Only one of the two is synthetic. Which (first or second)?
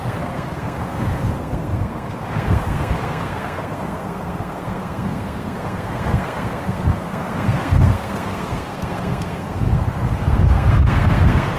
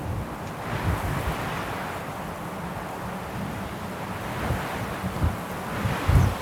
first